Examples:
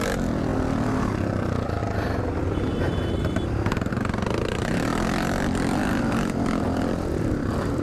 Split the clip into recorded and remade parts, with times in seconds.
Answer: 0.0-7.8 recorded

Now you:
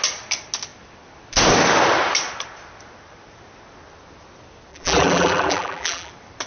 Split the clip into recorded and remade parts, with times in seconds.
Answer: 0.0-4.7 recorded; 4.7-6.1 remade; 6.1-6.5 recorded

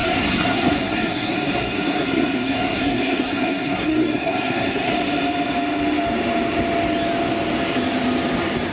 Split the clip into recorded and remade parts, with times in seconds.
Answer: 0.0-4.9 remade; 4.9-8.7 recorded

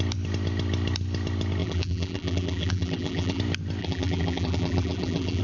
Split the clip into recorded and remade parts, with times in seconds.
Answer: 0.0-1.6 recorded; 1.6-3.4 remade; 3.4-3.8 recorded; 3.8-5.4 remade

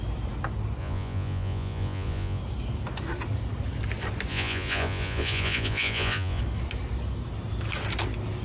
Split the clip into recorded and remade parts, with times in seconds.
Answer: 0.0-0.8 recorded; 0.8-2.4 remade; 2.4-4.3 recorded; 4.3-6.4 remade; 6.4-8.4 recorded

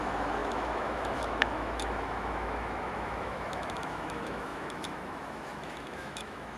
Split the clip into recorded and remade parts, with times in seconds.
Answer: 0.0-6.6 remade

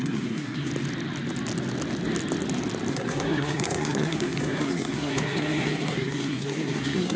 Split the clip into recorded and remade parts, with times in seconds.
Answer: 0.0-0.7 remade; 0.7-2.9 recorded; 2.9-7.2 remade

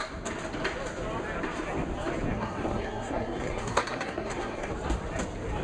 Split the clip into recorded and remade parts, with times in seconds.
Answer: 0.0-2.3 recorded; 2.3-4.7 remade; 4.7-5.6 recorded